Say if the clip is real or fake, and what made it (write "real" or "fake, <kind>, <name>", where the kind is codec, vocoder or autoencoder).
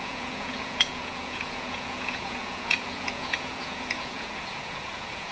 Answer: fake, vocoder, Vocos